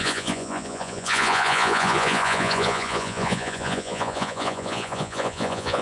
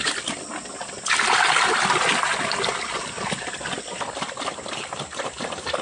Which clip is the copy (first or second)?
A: first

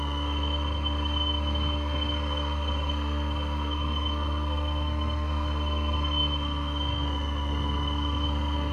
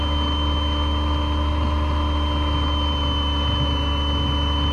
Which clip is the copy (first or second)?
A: first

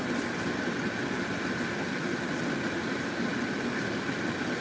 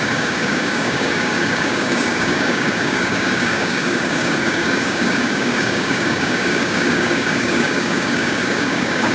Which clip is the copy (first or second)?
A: second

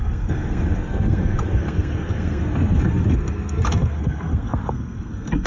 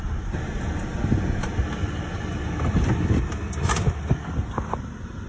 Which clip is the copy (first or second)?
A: first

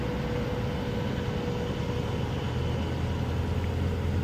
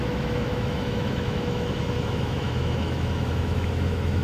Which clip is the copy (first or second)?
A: second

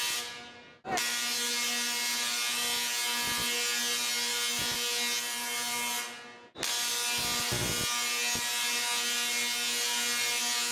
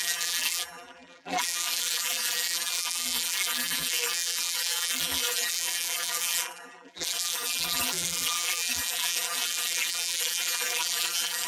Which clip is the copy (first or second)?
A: second